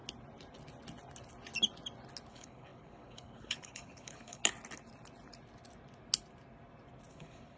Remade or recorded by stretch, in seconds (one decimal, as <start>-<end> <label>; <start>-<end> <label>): 0.0-2.3 recorded; 2.3-4.4 remade; 4.4-7.1 recorded; 7.1-7.6 remade